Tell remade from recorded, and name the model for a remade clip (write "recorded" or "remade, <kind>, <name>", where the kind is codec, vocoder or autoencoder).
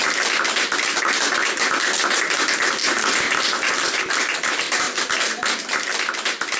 recorded